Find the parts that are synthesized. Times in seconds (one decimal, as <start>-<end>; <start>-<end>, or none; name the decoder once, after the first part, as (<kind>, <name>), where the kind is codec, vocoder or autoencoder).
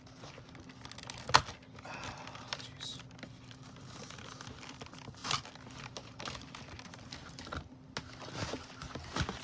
none